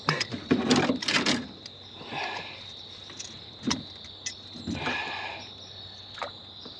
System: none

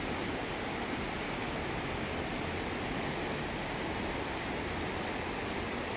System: none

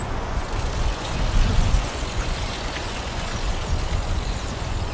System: vocoder, Vocos